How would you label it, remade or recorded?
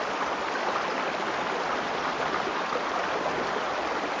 recorded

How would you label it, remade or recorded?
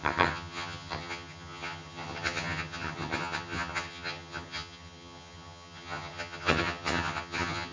remade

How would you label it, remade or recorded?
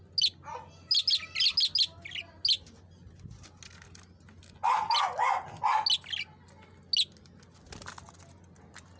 recorded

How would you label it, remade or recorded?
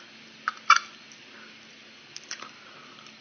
recorded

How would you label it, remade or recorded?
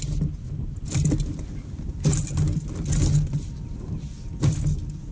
recorded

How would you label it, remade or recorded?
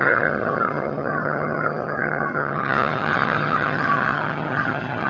remade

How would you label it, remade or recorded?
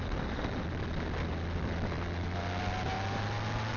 recorded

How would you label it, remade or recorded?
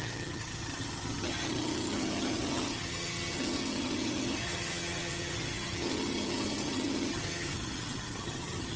remade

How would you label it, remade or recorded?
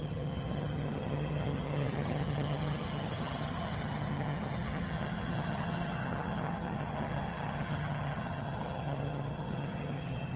remade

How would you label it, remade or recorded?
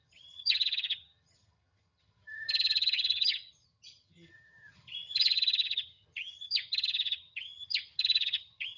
remade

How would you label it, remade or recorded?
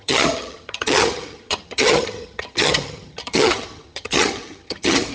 remade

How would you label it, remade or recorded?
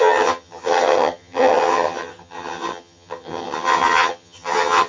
remade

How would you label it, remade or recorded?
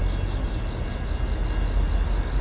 recorded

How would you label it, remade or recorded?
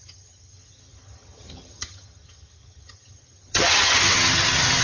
remade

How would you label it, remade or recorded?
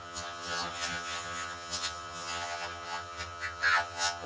remade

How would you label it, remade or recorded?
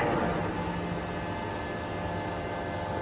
recorded